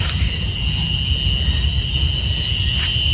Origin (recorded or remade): recorded